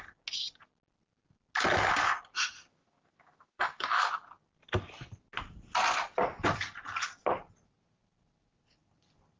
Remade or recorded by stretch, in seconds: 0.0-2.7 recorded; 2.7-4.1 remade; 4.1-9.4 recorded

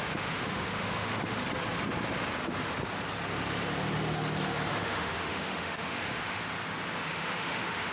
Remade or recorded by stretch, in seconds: 0.0-1.4 remade; 1.4-4.7 recorded; 4.7-6.4 remade; 6.4-7.0 recorded; 7.0-7.9 remade

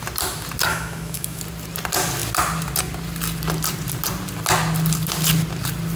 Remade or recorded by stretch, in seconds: 0.0-0.7 recorded; 0.7-1.4 remade; 1.4-6.0 recorded

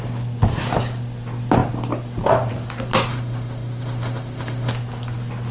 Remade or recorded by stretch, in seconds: 0.0-3.1 recorded; 3.1-4.7 remade; 4.7-5.5 recorded

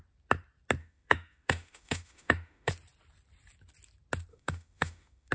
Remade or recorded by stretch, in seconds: 0.0-0.8 recorded; 0.8-2.7 remade; 2.7-4.3 recorded; 4.3-5.3 remade

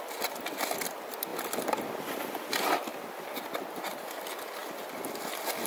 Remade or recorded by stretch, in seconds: 0.0-5.7 recorded